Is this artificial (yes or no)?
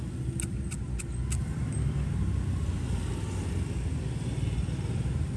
no